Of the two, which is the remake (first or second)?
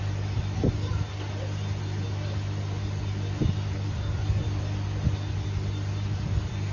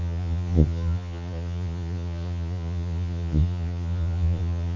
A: second